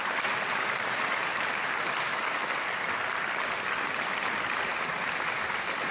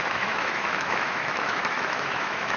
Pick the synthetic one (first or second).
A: second